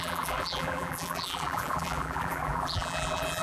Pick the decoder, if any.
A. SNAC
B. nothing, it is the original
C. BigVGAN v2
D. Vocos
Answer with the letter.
C